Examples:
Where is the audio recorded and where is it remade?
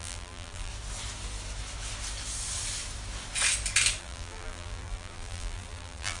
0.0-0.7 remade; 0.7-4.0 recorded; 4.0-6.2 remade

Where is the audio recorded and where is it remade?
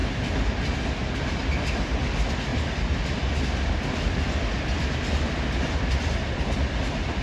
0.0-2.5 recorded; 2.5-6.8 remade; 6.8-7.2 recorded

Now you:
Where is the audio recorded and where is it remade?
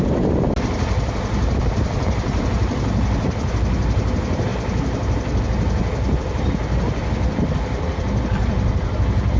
0.0-9.4 recorded